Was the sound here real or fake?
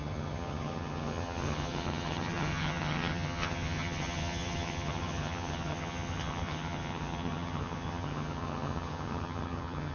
fake